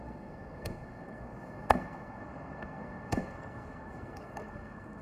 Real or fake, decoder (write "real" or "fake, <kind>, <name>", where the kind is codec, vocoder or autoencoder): fake, codec, SNAC